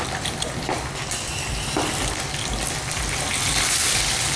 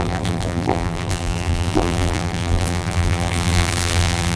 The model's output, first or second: second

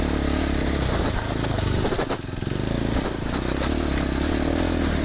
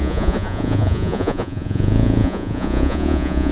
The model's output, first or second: second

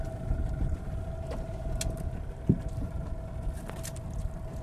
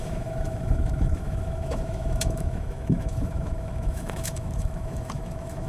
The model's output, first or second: second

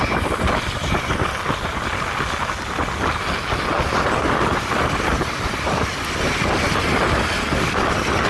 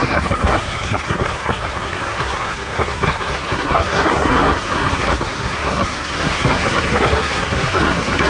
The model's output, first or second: second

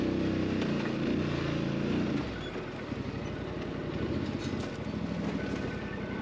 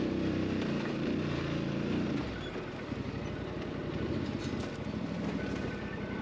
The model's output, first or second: second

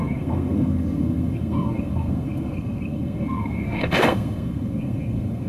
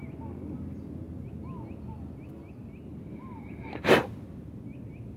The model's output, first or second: first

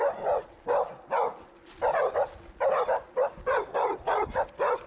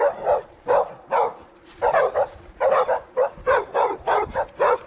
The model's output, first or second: second